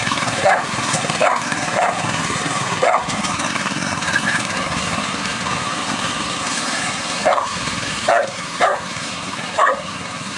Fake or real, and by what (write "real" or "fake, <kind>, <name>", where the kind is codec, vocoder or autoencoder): fake, codec, SNAC